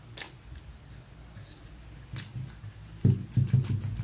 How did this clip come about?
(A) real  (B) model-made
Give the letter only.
A